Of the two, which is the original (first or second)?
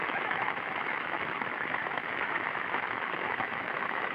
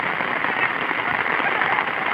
second